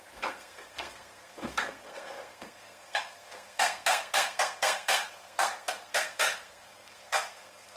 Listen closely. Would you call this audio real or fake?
fake